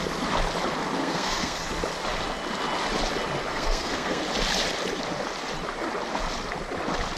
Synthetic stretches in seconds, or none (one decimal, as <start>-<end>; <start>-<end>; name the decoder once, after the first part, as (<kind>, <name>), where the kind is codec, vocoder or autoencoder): 1.0-1.6 (codec, SNAC); 3.5-4.2